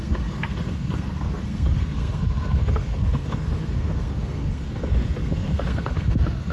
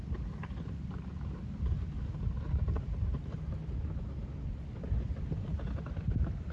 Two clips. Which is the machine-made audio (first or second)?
first